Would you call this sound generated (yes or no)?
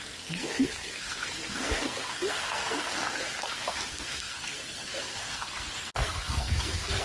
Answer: yes